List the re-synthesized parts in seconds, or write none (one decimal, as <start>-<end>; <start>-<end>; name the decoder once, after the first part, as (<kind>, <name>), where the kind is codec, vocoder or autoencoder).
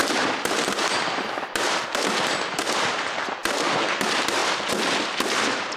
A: none